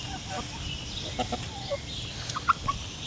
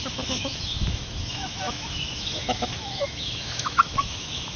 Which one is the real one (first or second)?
first